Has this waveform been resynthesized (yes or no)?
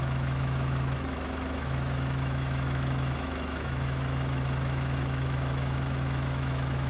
yes